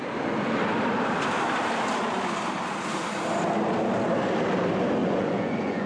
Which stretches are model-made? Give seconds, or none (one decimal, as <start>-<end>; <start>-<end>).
5.0-5.9